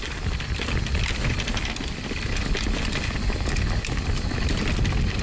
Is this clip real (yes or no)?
yes